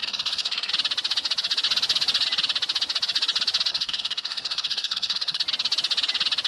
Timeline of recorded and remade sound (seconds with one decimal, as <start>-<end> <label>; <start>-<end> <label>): 0.0-0.7 remade; 0.7-3.7 recorded; 3.7-5.4 remade; 5.4-6.5 recorded